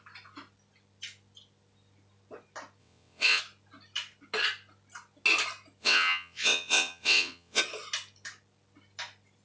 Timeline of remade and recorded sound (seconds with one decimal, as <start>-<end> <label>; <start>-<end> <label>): 0.0-2.8 recorded; 2.8-3.4 remade; 3.4-5.8 recorded; 5.8-7.6 remade; 7.6-9.4 recorded